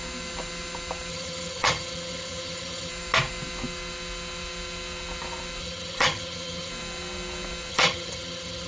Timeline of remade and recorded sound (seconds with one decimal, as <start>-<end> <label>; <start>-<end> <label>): 0.0-1.1 recorded; 1.1-2.9 remade; 2.9-5.6 recorded; 5.6-6.7 remade; 6.7-7.7 recorded; 7.7-8.7 remade